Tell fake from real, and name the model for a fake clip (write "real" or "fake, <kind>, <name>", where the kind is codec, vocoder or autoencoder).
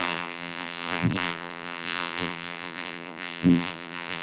fake, vocoder, BigVGAN v2